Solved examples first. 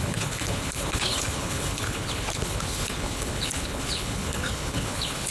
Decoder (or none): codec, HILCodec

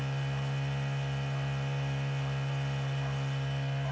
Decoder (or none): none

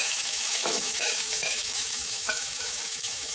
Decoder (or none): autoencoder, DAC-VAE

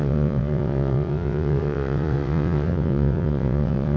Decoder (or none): vocoder, WaveNeXt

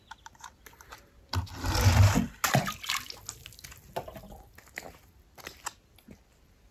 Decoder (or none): none